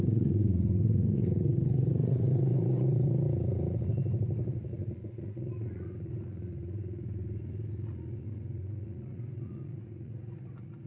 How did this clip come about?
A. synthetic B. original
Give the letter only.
A